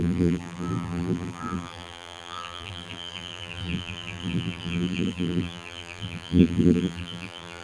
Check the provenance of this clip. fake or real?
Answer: fake